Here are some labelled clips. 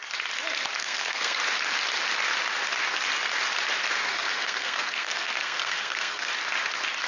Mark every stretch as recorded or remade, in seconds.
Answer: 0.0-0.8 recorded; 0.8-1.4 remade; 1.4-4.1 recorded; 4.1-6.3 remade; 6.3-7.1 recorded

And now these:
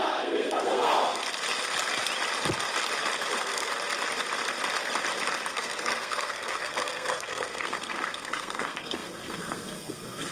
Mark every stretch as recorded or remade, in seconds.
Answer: 0.0-1.2 remade; 1.2-3.3 recorded; 3.3-3.7 remade; 3.7-5.5 recorded; 5.5-10.3 remade

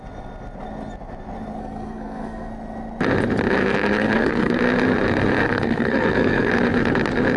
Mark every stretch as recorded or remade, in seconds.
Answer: 0.0-1.6 recorded; 1.6-2.5 remade; 2.5-3.6 recorded; 3.6-4.6 remade; 4.6-5.4 recorded; 5.4-6.5 remade; 6.5-7.4 recorded

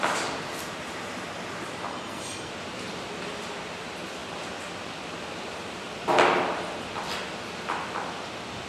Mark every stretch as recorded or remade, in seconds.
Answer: 0.0-1.9 recorded; 1.9-2.5 remade; 2.5-8.7 recorded

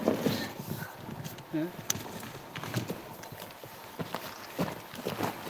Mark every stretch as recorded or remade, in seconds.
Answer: 0.0-5.5 recorded

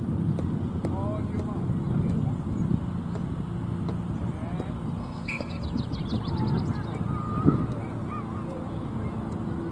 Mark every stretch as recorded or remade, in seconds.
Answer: 0.0-5.0 recorded; 5.0-5.6 remade; 5.6-9.7 recorded